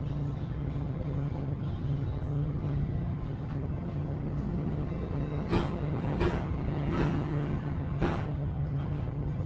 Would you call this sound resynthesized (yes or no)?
yes